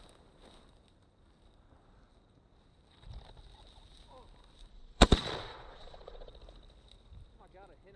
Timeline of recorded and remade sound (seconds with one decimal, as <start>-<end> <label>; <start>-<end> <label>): 0.0-4.7 recorded; 4.7-6.3 remade; 6.3-8.0 recorded